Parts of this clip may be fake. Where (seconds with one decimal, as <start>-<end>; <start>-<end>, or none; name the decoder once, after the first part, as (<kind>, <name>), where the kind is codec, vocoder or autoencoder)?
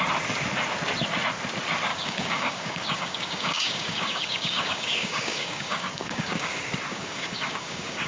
1.9-6.5 (codec, DAC); 6.9-8.1